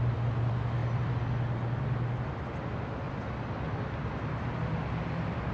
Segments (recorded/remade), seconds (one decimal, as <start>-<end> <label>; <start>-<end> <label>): 0.0-5.5 recorded

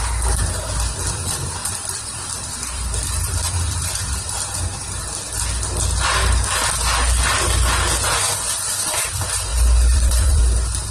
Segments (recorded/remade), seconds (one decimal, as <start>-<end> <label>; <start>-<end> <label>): 0.0-1.6 recorded; 1.6-5.0 remade; 5.0-9.5 recorded; 9.5-10.4 remade; 10.4-10.9 recorded